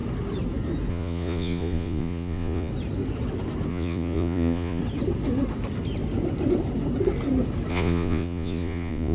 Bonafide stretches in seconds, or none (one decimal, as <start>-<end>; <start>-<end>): 0.0-0.9; 2.7-3.7; 4.8-7.7